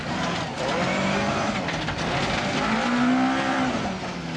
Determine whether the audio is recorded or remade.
recorded